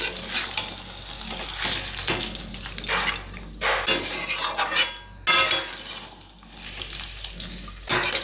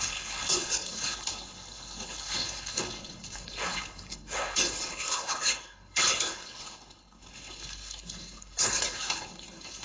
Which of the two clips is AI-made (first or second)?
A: second